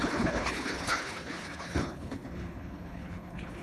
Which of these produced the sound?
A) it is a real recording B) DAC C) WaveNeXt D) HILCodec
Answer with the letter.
D